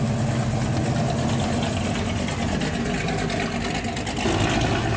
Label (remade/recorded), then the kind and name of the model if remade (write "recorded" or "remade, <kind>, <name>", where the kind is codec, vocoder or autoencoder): recorded